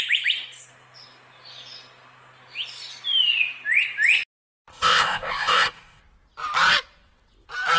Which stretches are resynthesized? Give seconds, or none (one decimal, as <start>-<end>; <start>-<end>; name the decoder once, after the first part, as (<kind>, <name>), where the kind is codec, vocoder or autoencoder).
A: 4.7-6.0 (codec, ZipCodec)